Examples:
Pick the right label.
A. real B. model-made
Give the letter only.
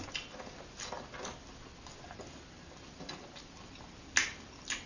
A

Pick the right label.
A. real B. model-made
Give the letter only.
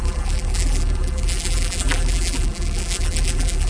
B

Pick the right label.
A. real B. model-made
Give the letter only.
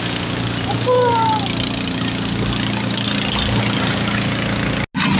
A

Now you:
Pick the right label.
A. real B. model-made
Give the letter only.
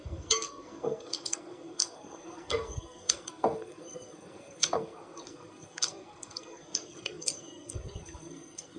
B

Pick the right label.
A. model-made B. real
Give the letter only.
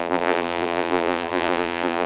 A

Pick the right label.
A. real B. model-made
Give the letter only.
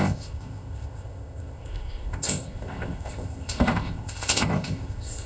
B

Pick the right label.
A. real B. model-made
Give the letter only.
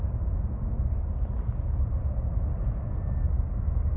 A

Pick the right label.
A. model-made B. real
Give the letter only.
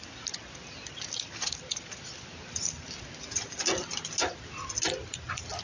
B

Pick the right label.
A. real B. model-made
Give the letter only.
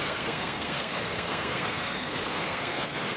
B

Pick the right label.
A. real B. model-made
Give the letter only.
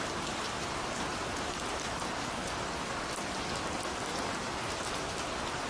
A